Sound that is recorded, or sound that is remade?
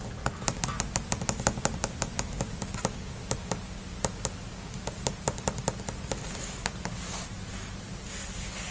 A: recorded